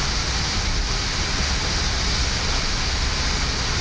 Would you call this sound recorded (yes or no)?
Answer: yes